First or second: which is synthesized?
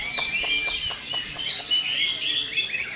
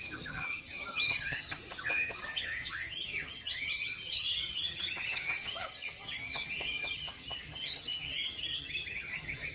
second